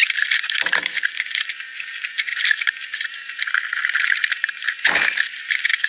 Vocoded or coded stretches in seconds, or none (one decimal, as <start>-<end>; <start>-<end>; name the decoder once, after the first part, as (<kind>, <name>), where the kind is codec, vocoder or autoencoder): 0.0-5.9 (vocoder, BigVGAN v2)